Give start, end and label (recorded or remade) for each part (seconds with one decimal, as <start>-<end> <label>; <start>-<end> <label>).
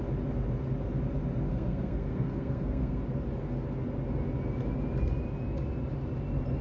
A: 0.0-1.5 recorded; 1.5-3.0 remade; 3.0-6.6 recorded